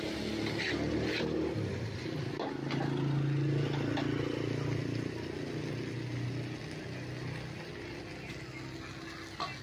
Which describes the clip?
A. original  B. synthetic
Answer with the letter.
A